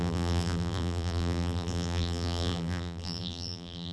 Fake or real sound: fake